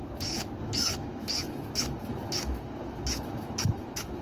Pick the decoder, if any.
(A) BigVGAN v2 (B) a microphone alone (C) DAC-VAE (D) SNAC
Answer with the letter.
C